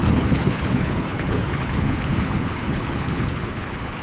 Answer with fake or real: fake